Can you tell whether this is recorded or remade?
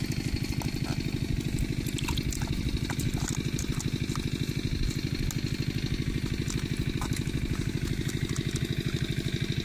recorded